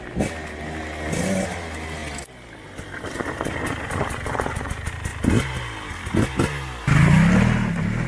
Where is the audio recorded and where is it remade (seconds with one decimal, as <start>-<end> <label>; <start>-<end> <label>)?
0.0-8.1 recorded

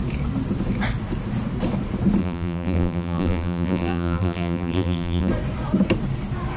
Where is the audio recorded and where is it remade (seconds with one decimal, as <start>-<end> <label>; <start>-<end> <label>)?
0.0-2.2 recorded; 2.2-5.3 remade; 5.3-6.6 recorded

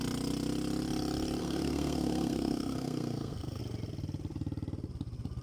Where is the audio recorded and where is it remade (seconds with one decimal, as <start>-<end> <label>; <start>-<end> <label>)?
0.0-1.4 recorded; 1.4-3.6 remade; 3.6-5.4 recorded

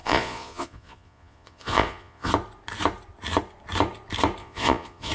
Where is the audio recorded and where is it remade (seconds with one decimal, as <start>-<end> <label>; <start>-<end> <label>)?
0.0-2.3 remade; 2.3-4.4 recorded; 4.4-5.1 remade

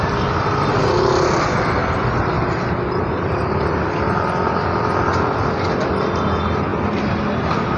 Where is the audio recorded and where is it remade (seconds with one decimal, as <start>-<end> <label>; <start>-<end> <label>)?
0.0-7.8 recorded

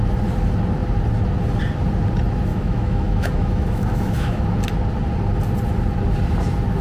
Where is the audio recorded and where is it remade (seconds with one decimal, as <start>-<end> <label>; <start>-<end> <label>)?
0.0-2.5 recorded; 2.5-4.4 remade; 4.4-6.8 recorded

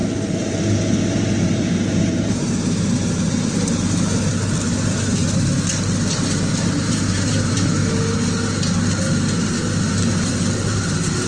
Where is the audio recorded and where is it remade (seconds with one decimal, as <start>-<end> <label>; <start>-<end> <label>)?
0.0-5.2 remade; 5.2-6.5 recorded; 6.5-7.8 remade; 7.8-9.9 recorded; 9.9-11.3 remade